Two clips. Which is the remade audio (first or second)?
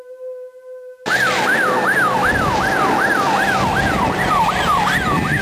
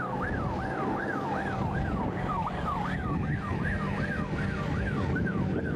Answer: second